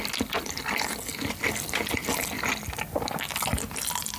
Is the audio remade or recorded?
recorded